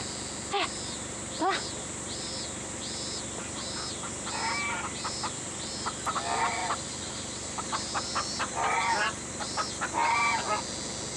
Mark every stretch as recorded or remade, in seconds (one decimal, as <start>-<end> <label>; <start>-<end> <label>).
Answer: 0.0-11.2 recorded